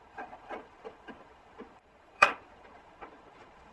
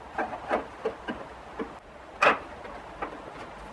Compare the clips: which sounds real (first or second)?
second